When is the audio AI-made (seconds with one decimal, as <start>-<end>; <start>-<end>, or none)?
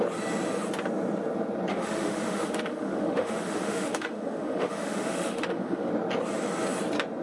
1.7-5.9